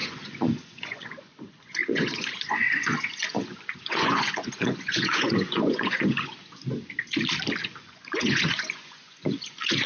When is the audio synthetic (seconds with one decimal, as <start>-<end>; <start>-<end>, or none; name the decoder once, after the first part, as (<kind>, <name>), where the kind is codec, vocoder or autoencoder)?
0.0-6.3 (vocoder, Vocos); 7.8-9.9